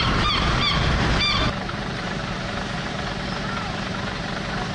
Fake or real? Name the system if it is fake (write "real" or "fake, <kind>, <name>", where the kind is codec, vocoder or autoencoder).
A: fake, vocoder, BigVGAN v2